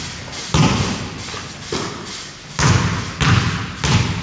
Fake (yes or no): no